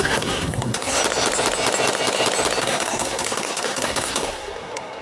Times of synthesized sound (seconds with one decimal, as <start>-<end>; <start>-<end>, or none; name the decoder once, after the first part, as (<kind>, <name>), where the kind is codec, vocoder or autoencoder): 0.0-1.0 (codec, SNAC); 2.6-5.0